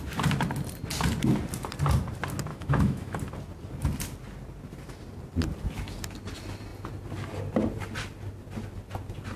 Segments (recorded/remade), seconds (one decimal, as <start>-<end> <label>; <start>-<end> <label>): 0.0-2.5 recorded; 2.5-3.2 remade; 3.2-9.4 recorded